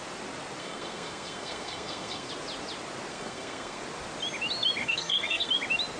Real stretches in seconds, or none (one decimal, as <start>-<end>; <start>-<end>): 0.0-0.6; 2.3-3.1; 3.8-4.8; 5.5-6.0